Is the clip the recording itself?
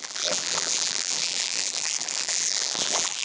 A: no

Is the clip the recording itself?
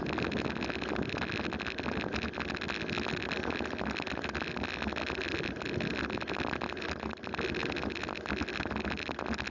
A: yes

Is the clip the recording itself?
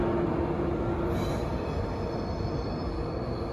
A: yes